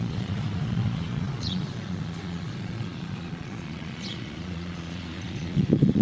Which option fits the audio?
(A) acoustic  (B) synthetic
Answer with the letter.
B